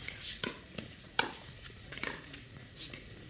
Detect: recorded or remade remade